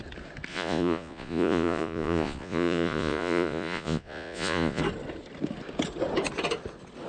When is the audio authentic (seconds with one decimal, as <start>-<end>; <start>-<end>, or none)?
0.0-0.5; 4.8-7.1